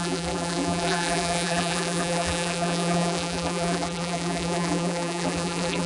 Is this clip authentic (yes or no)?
no